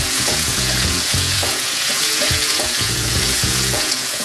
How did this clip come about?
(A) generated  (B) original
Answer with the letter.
A